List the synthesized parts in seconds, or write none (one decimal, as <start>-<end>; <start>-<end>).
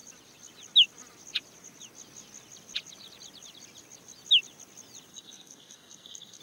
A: 5.1-6.4